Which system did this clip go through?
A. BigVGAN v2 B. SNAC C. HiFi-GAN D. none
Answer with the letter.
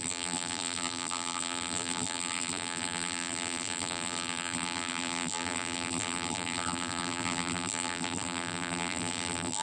A